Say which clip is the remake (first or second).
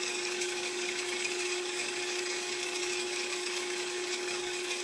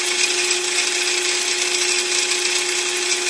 first